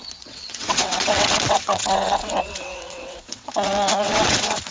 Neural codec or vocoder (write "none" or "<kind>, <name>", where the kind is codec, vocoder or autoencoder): vocoder, WaveNeXt